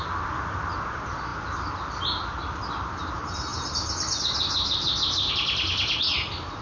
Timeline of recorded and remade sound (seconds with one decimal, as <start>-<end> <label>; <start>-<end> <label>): 0.0-6.6 recorded